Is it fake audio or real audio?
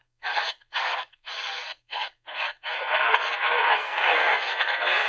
fake